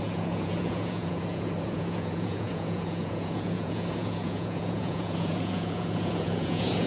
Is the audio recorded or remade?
remade